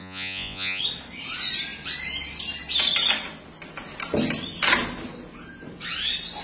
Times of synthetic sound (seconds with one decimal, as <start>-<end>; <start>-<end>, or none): 0.0-0.8